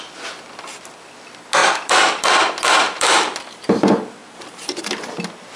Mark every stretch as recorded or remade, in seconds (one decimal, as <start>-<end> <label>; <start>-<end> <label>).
0.0-1.6 recorded; 1.6-3.7 remade; 3.7-4.2 recorded; 4.2-4.8 remade; 4.8-5.6 recorded